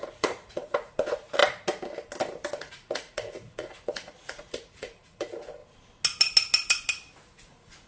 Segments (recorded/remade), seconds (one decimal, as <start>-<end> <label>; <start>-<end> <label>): 0.0-1.4 remade; 1.4-2.6 recorded; 2.6-5.6 remade; 5.6-7.5 recorded; 7.5-7.9 remade